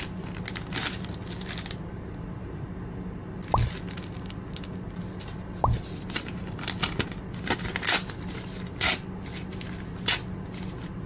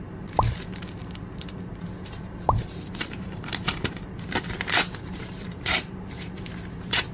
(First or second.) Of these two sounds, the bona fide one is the first